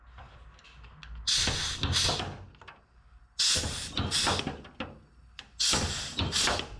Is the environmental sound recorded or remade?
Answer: recorded